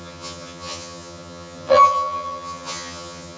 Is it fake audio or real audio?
fake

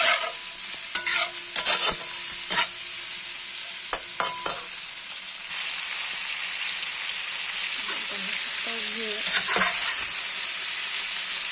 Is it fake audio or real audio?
real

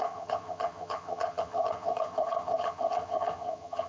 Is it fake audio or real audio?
fake